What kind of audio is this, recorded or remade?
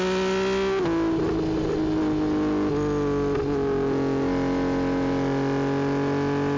recorded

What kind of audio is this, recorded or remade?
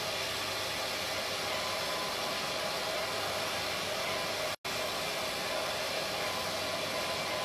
recorded